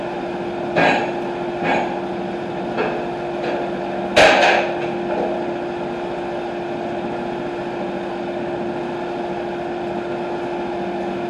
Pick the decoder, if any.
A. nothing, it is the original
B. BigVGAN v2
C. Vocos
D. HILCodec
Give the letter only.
A